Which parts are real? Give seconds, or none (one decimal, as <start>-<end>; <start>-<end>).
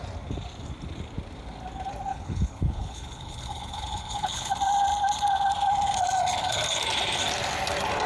0.0-2.1; 4.5-8.1